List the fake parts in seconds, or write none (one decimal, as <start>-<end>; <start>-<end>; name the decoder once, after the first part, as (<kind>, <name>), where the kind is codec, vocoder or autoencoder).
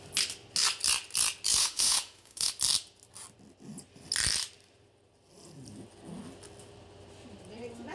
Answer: 1.6-2.5 (autoencoder, DAC-VAE)